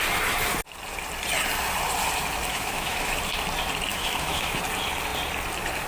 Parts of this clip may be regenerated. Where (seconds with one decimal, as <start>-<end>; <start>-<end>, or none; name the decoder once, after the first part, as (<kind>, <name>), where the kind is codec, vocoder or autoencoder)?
2.5-3.1 (autoencoder, DAC-VAE); 3.9-4.6